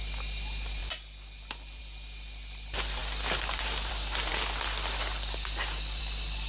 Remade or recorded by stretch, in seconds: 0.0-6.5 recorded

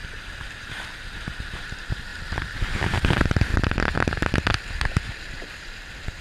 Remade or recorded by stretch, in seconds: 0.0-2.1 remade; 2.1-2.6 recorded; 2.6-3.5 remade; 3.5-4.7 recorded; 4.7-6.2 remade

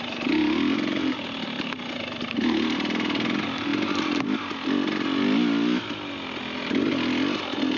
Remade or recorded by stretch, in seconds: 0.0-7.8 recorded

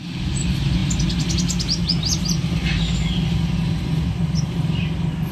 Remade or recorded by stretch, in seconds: 0.0-5.3 recorded

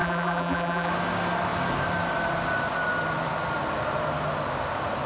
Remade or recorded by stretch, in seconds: 0.0-0.9 remade; 0.9-5.1 recorded